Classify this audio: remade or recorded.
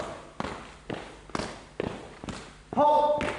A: recorded